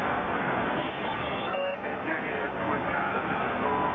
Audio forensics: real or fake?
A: fake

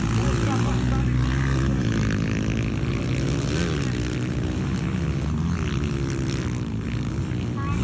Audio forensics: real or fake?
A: real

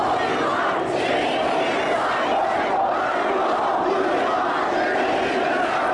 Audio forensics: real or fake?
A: real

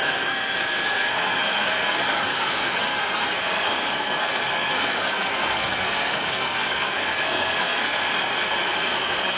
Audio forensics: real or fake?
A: fake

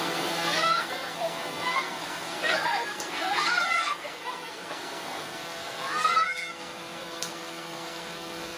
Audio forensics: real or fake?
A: fake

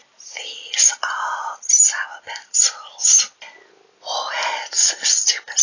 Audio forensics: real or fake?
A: real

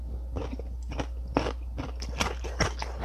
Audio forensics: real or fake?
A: real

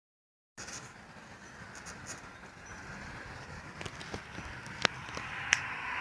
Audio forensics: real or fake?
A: real